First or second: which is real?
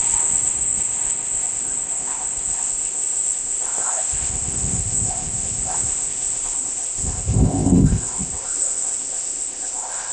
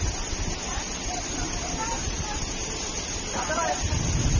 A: second